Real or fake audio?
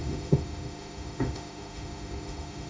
fake